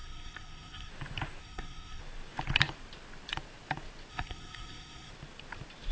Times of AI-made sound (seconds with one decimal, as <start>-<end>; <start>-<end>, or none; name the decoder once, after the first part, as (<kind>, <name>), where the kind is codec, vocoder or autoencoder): 0.0-0.9 (codec, SNAC); 1.4-2.0; 4.1-5.1